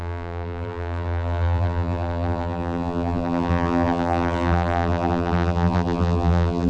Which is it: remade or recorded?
remade